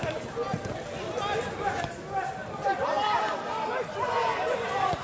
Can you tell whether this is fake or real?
real